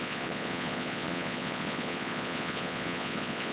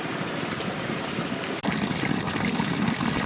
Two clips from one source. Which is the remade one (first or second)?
first